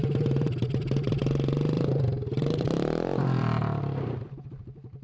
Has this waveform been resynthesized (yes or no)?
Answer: yes